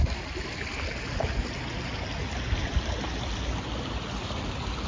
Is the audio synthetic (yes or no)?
no